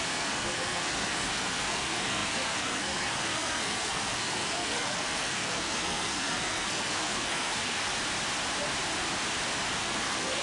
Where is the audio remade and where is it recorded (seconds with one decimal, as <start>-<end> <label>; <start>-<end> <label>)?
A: 0.0-7.9 remade; 7.9-9.8 recorded; 9.8-10.4 remade